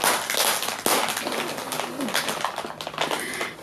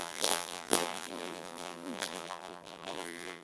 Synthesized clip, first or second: second